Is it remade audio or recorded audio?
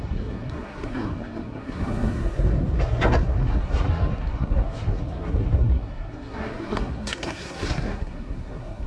remade